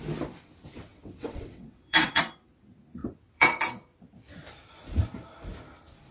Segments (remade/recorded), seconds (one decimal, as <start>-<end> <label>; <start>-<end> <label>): 0.0-0.9 recorded; 0.9-2.2 remade; 2.2-3.0 recorded; 3.0-3.6 remade; 3.6-6.1 recorded